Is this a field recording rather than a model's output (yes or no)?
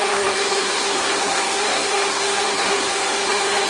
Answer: no